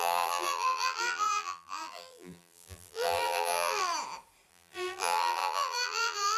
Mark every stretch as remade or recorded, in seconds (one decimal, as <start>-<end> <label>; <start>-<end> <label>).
0.0-3.9 remade; 3.9-4.5 recorded; 4.5-6.4 remade